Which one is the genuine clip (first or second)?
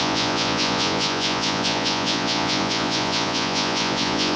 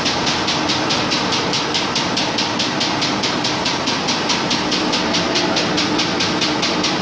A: second